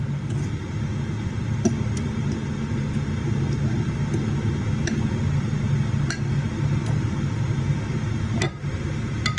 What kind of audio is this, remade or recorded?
recorded